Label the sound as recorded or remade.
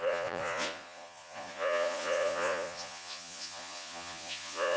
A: remade